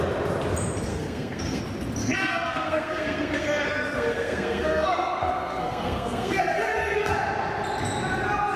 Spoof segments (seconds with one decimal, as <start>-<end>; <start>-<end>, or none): 0.9-1.6; 2.0-7.1